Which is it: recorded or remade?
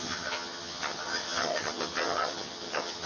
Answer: remade